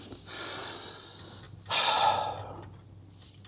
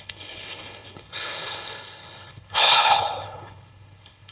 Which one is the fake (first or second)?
second